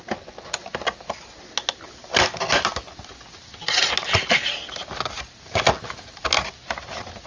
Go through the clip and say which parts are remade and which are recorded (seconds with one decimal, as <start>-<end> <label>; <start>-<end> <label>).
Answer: 0.0-7.3 recorded